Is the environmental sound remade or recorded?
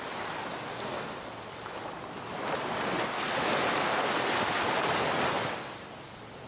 recorded